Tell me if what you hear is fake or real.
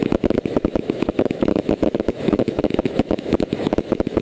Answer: fake